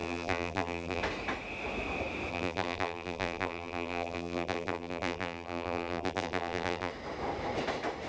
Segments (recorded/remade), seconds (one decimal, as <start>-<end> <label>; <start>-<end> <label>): 0.0-1.0 remade; 1.0-2.3 recorded; 2.3-6.9 remade; 6.9-8.1 recorded